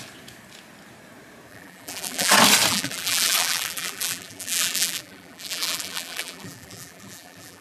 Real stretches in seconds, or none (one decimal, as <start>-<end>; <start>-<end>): 0.0-1.5; 2.3-2.7

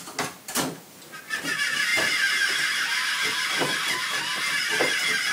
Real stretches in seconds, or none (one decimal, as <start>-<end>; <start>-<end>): 0.0-5.3